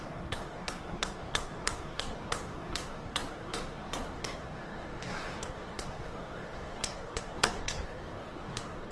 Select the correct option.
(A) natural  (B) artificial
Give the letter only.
B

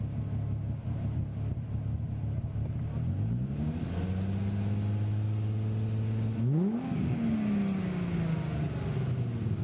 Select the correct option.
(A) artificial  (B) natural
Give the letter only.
B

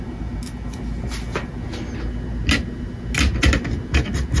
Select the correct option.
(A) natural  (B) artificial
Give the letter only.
A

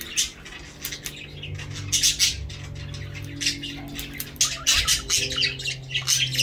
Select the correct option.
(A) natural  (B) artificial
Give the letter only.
A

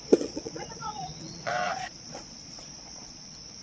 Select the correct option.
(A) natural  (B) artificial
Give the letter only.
B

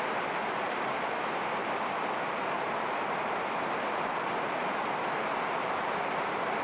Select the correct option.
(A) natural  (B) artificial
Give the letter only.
B